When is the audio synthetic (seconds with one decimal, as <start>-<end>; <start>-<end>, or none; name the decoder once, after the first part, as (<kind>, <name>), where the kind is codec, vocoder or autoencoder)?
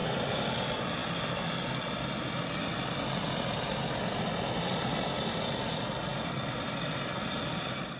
none